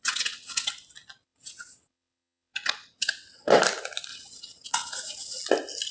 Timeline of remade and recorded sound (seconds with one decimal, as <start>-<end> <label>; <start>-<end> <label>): 0.0-0.7 remade; 0.7-1.2 recorded; 1.2-3.6 remade; 3.6-4.1 recorded; 4.1-5.4 remade; 5.4-5.9 recorded